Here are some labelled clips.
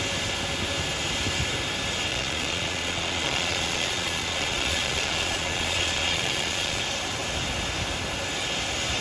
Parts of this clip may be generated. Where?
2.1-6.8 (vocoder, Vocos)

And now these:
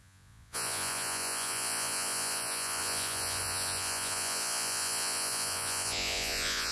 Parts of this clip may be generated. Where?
0.0-6.7 (vocoder, Vocos)

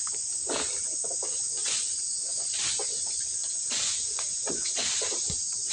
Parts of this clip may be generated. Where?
1.6-2.4 (vocoder, Vocos); 3.4-4.9

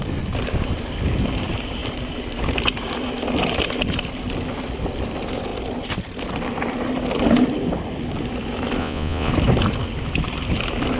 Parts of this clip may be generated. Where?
8.8-9.3 (vocoder, Vocos)

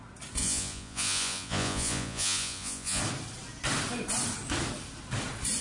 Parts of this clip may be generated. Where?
0.4-3.0 (vocoder, Vocos)